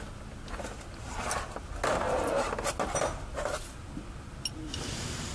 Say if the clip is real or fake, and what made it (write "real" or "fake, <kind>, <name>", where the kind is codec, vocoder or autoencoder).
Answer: real